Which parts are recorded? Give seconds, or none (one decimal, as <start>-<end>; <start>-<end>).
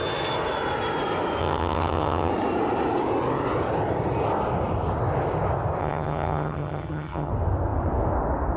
0.0-1.4; 2.3-5.8; 7.3-8.6